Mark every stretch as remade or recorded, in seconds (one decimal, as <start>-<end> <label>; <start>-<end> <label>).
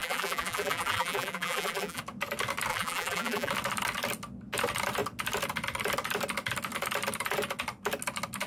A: 0.0-2.0 remade; 2.0-2.7 recorded; 2.7-3.5 remade; 3.5-8.5 recorded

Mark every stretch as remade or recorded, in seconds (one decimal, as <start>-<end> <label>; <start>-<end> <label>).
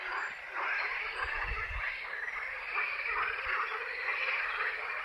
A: 0.0-5.0 recorded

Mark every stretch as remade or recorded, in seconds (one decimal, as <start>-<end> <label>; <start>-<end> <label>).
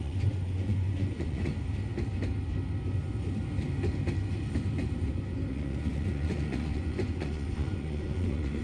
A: 0.0-1.5 remade; 1.5-5.5 recorded; 5.5-8.6 remade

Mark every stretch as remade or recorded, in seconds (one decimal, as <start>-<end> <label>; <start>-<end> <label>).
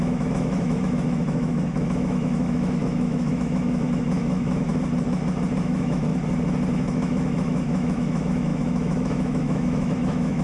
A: 0.0-4.7 remade; 4.7-5.6 recorded; 5.6-6.1 remade; 6.1-6.7 recorded; 6.7-10.4 remade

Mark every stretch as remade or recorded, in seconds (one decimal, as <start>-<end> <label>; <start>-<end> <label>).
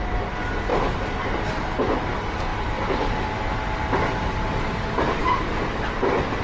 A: 0.0-6.4 recorded